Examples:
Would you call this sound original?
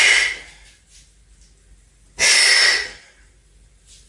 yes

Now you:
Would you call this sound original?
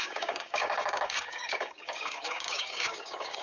no